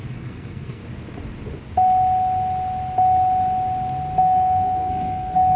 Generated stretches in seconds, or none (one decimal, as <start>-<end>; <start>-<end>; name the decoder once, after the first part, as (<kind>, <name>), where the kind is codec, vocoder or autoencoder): 0.0-0.8 (codec, SNAC); 4.2-5.6